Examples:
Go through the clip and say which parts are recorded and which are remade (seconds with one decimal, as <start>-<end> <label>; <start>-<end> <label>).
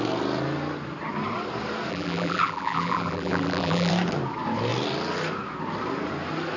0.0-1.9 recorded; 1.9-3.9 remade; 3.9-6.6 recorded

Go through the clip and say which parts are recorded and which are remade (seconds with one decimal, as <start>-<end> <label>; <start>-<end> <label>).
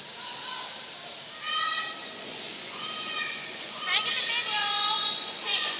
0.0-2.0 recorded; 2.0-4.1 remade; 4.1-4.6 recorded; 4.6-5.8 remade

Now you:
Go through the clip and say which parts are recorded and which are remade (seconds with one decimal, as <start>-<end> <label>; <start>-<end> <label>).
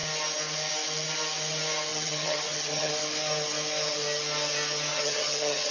0.0-1.9 recorded; 1.9-2.9 remade; 2.9-4.9 recorded; 4.9-5.7 remade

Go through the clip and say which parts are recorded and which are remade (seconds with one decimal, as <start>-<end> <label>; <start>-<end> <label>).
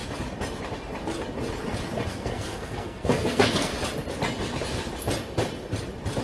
0.0-2.1 recorded; 2.1-3.7 remade; 3.7-6.2 recorded